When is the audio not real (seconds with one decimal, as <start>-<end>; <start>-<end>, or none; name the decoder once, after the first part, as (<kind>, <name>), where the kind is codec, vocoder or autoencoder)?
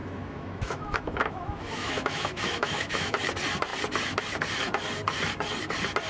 0.0-3.2 (autoencoder, DAC-VAE)